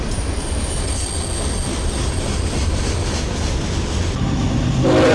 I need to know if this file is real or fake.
real